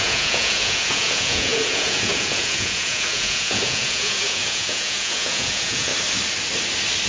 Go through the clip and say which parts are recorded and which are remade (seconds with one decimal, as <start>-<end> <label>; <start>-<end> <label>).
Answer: 0.0-5.9 remade; 5.9-7.1 recorded